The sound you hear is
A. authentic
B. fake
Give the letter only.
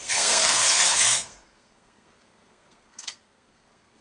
B